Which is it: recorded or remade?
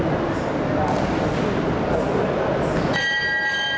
recorded